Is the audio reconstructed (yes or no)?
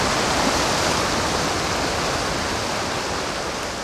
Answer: no